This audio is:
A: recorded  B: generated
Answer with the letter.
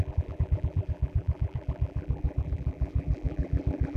B